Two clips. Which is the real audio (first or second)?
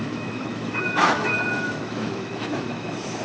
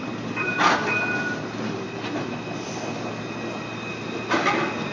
second